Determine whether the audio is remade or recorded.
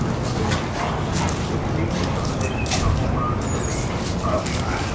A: recorded